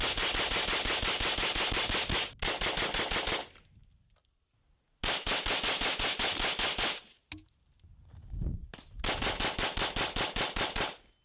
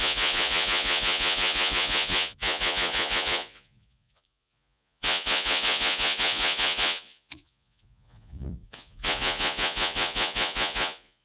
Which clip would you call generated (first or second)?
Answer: second